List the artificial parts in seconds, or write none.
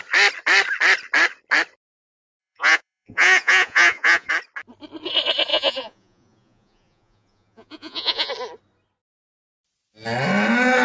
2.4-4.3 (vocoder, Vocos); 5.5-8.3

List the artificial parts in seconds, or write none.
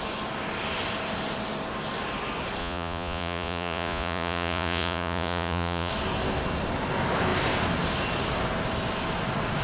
2.6-5.9 (vocoder, Vocos)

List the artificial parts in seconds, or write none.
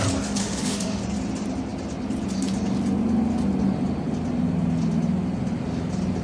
0.4-1.0 (autoencoder, DAC-VAE)